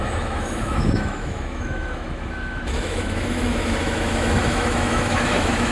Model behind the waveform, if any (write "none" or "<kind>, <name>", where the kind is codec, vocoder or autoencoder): autoencoder, DAC-VAE